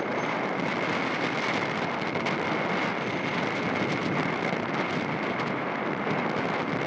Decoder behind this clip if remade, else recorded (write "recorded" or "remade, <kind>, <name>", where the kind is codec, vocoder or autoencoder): recorded